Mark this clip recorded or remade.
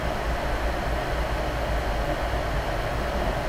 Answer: recorded